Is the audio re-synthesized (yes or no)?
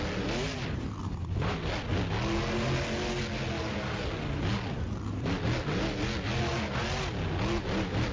no